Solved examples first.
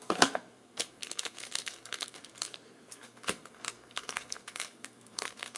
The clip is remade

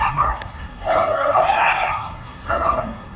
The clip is remade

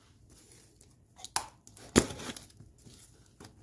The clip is recorded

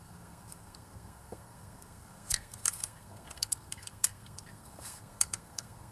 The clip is remade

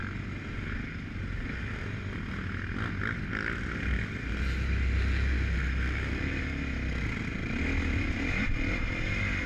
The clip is recorded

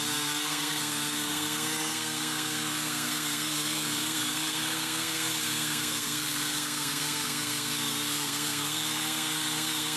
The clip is remade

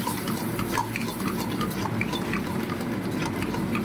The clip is recorded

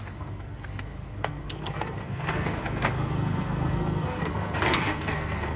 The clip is remade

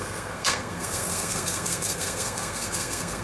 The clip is remade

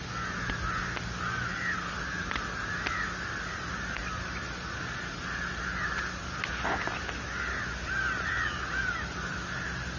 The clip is recorded